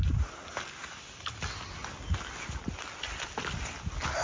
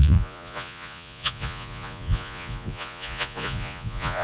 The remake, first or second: second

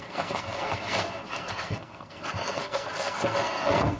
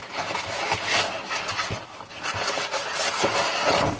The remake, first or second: first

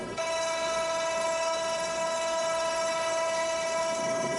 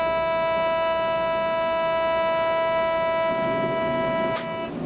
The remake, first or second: first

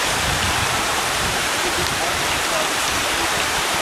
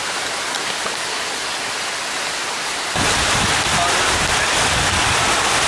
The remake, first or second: first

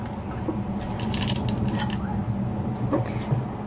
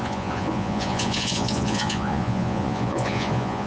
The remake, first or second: second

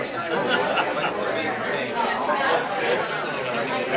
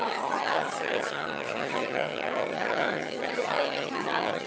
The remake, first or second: second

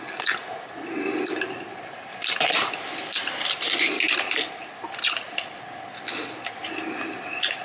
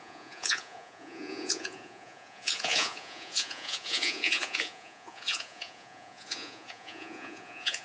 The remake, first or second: second